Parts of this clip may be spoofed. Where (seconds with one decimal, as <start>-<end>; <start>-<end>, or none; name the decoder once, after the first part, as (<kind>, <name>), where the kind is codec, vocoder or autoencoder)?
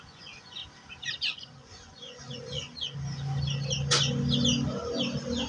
0.0-0.6 (vocoder, Vocos); 1.2-2.6